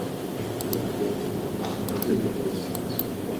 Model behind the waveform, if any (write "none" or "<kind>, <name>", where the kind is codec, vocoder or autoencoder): none